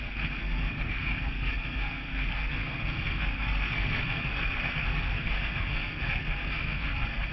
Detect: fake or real fake